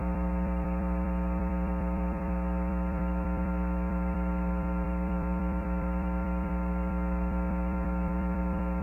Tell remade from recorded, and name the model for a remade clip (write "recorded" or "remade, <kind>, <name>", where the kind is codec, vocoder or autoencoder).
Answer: remade, vocoder, BigVGAN v2